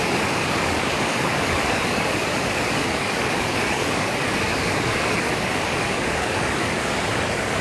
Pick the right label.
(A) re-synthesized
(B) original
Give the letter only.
A